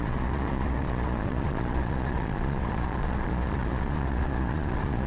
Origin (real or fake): fake